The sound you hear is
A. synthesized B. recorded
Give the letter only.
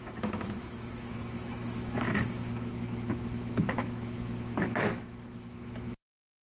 A